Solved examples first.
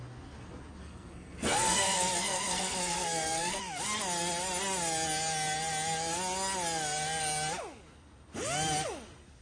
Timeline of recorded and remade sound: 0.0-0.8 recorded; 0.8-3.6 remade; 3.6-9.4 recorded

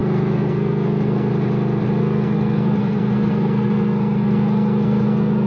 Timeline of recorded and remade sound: 0.0-1.3 remade; 1.3-2.0 recorded; 2.0-5.5 remade

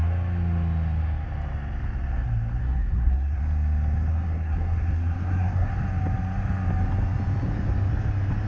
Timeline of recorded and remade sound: 0.0-2.6 recorded; 2.6-3.4 remade; 3.4-4.1 recorded; 4.1-5.7 remade; 5.7-8.5 recorded

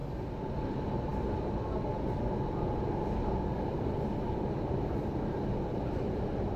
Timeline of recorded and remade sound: 0.0-6.6 recorded

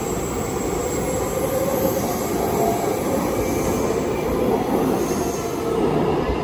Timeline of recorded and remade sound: 0.0-6.4 recorded

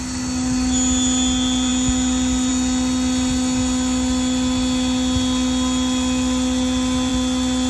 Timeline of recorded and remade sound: 0.0-7.7 recorded

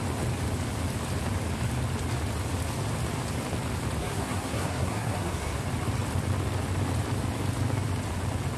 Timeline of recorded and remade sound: 0.0-4.0 recorded; 4.0-5.6 remade; 5.6-8.6 recorded

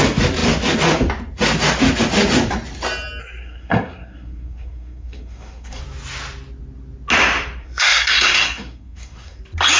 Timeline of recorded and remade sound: 0.0-3.2 recorded; 3.2-5.8 remade; 5.8-7.6 recorded; 7.6-9.4 remade; 9.4-9.8 recorded